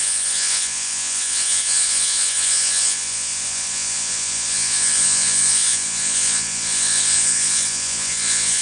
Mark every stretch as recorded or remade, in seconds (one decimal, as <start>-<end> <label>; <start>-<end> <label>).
0.0-8.6 remade